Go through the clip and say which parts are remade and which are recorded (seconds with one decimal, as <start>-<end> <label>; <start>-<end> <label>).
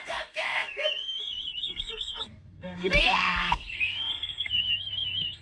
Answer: 0.0-5.4 remade